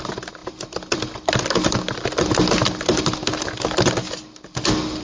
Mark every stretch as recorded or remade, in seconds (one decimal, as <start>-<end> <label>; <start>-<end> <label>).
0.0-5.0 recorded